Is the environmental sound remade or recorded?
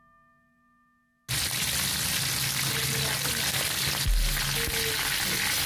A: recorded